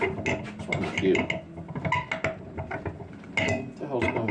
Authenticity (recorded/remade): recorded